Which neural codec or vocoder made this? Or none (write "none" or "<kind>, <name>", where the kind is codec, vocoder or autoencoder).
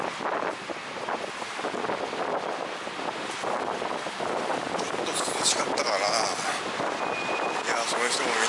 vocoder, BigVGAN v2